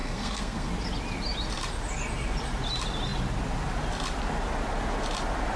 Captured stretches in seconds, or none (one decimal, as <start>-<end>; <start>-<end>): 0.7-5.6